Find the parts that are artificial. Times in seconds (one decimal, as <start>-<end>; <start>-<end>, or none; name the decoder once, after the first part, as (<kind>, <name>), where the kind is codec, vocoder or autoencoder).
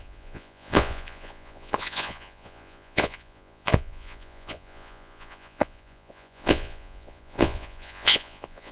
0.0-8.7 (vocoder, Vocos)